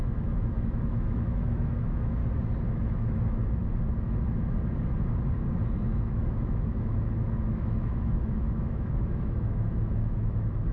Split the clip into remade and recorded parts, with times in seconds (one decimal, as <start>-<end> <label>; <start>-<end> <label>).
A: 0.0-2.2 remade; 2.2-2.7 recorded; 2.7-3.6 remade; 3.6-5.8 recorded; 5.8-10.7 remade